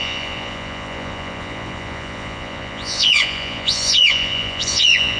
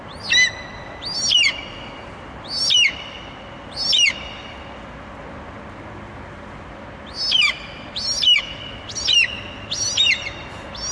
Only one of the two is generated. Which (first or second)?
first